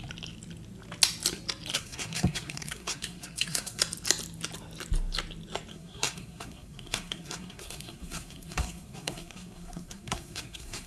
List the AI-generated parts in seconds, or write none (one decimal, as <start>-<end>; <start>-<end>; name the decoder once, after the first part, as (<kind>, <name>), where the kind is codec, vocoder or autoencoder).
1.7-3.8 (codec, SNAC); 5.7-10.9